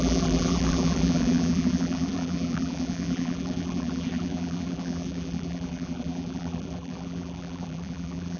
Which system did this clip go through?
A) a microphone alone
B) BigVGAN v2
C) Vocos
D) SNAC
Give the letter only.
B